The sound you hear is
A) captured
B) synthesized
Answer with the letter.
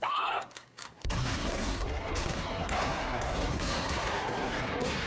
B